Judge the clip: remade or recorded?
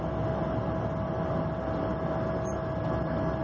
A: recorded